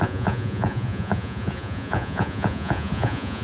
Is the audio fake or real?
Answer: fake